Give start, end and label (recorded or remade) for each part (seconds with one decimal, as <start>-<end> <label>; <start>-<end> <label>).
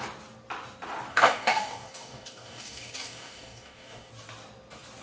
0.0-1.1 recorded; 1.1-4.1 remade; 4.1-5.0 recorded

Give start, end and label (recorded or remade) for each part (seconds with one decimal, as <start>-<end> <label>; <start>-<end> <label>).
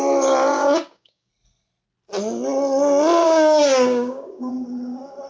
0.0-0.5 recorded; 0.5-1.3 remade; 1.3-3.2 recorded; 3.2-4.5 remade; 4.5-5.3 recorded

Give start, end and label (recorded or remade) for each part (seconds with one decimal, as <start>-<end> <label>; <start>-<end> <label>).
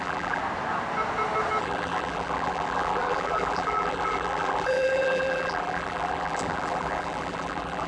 0.0-0.4 remade; 0.4-1.6 recorded; 1.6-7.9 remade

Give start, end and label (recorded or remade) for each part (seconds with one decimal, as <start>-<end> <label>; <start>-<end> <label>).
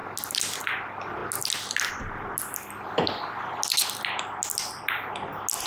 0.0-5.7 recorded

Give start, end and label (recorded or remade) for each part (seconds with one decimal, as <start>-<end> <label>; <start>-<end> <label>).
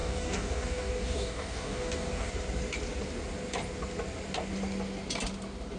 0.0-2.3 remade; 2.3-5.8 recorded